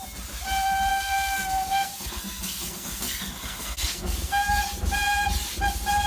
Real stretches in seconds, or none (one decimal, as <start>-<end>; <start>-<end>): 0.0-0.9; 4.6-6.1